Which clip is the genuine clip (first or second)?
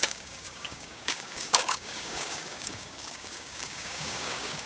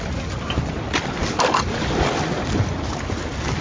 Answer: second